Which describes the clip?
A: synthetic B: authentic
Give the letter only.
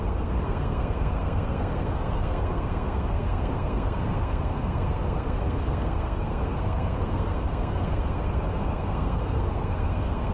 A